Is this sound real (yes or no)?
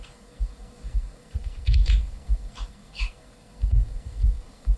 no